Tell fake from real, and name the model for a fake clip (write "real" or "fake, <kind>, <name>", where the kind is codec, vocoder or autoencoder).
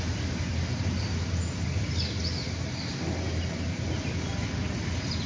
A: real